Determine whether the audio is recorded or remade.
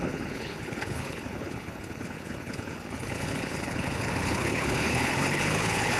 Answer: remade